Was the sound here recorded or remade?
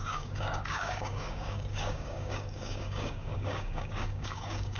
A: remade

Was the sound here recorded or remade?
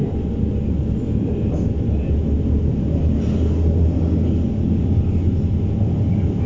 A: recorded